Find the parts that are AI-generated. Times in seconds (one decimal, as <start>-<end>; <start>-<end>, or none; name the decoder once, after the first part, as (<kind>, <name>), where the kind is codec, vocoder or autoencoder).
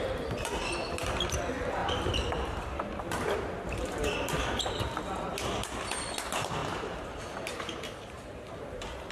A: 1.8-4.4 (vocoder, BigVGAN v2); 6.6-8.2